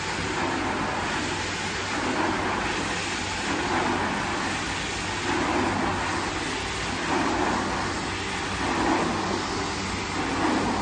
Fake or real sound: real